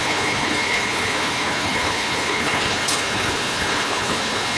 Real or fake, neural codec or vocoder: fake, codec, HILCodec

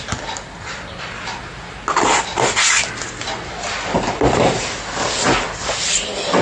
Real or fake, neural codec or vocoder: real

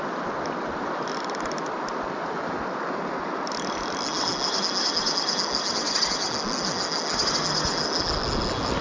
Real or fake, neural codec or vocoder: real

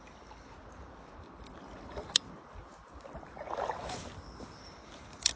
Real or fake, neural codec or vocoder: real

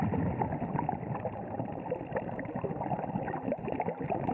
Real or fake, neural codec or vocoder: real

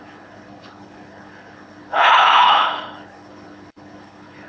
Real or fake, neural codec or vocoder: fake, codec, HILCodec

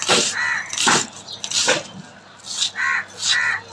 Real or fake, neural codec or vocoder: real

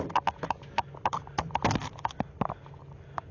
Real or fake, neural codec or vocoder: real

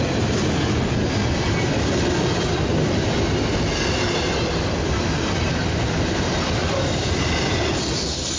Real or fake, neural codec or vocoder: real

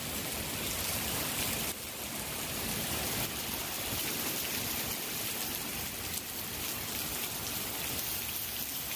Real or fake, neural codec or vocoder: real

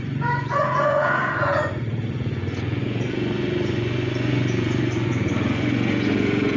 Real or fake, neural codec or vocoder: fake, vocoder, Vocos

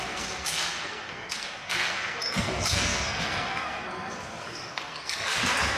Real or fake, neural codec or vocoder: fake, codec, SNAC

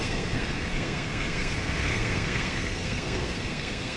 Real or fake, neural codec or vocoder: fake, codec, SNAC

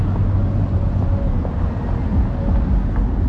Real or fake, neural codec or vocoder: real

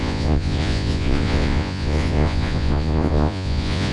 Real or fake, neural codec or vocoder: fake, vocoder, Vocos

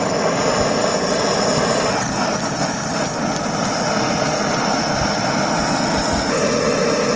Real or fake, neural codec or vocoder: real